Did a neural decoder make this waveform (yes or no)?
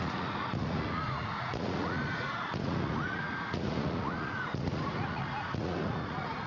yes